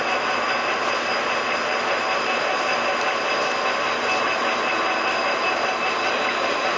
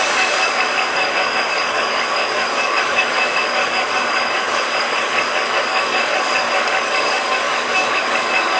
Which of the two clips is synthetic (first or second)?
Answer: second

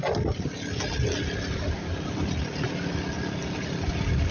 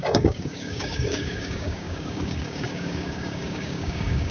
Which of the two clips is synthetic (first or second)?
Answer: second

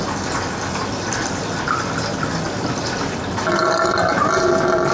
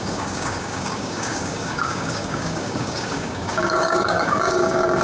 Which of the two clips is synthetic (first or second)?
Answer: second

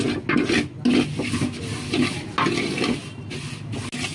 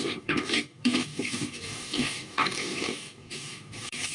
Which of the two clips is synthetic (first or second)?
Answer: second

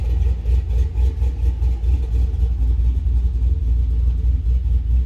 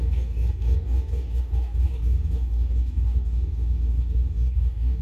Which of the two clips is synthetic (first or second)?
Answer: second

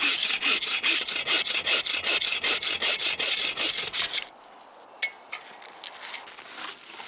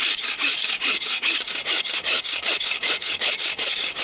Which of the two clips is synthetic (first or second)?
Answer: second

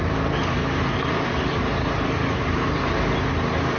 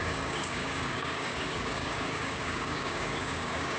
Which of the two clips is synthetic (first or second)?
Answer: second